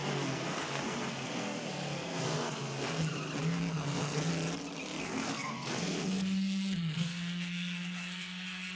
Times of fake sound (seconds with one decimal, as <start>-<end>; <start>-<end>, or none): 0.0-3.1; 3.7-4.3; 5.0-8.8